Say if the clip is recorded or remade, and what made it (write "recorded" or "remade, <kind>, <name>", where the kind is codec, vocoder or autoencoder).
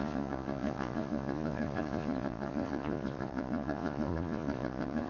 remade, vocoder, Vocos